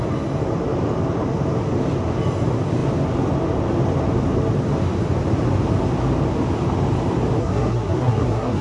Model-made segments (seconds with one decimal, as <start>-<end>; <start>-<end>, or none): 7.4-8.6